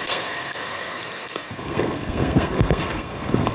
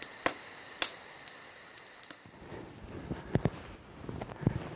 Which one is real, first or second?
second